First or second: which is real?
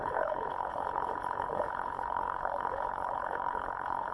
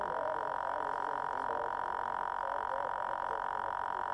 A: second